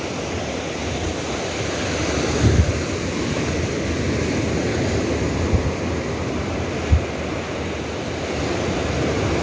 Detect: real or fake real